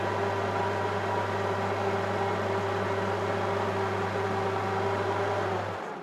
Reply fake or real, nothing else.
real